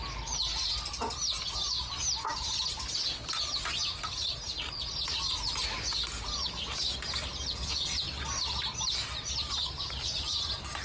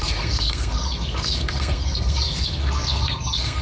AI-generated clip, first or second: second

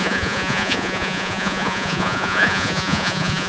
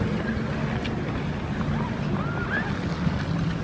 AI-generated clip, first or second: first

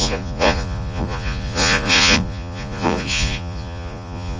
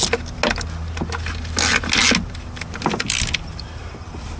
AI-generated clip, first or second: first